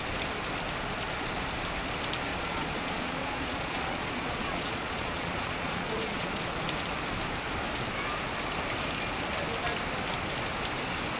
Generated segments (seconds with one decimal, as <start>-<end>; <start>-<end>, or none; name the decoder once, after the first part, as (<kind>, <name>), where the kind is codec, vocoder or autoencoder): 2.3-6.5 (vocoder, Vocos)